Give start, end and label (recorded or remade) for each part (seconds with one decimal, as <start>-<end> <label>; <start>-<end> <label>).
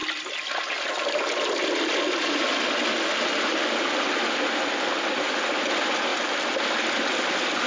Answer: 0.0-2.2 remade; 2.2-6.1 recorded; 6.1-6.9 remade; 6.9-7.7 recorded